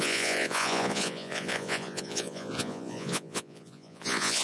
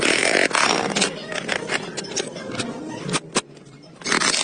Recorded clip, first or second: second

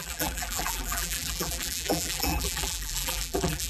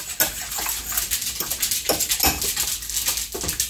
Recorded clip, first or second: second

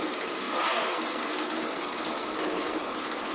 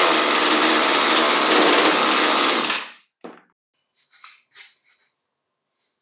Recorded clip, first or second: second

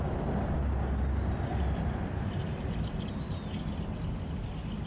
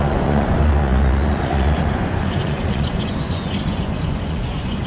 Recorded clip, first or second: first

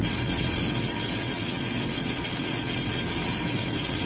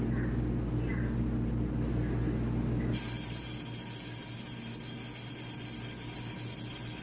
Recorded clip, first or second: second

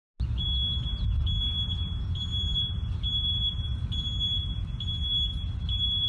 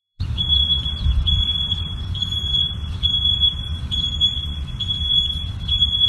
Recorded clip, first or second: first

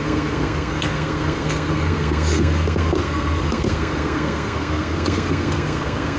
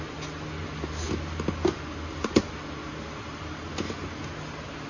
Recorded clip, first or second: second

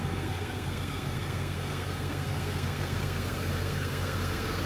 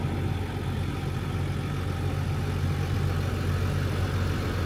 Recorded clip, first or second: second